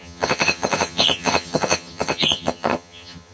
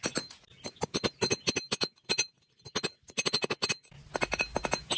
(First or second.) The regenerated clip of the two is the first